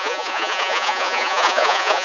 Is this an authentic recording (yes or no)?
no